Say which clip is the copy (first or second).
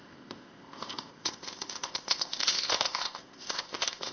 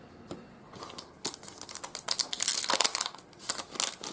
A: first